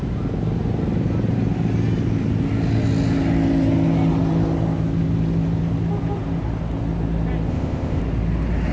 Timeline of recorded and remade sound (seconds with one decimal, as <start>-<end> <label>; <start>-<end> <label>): 0.0-7.5 recorded; 7.5-8.0 remade; 8.0-8.7 recorded